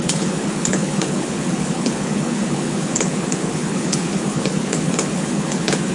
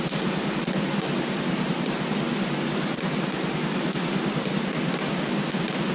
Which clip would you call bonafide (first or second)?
second